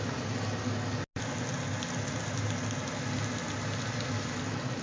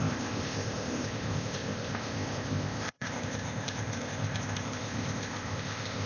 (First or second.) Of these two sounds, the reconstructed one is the second